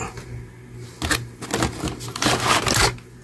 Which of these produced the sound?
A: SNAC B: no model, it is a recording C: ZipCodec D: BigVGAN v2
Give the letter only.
B